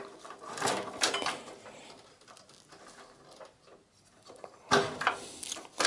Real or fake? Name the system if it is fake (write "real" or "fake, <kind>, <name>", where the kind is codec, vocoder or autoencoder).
real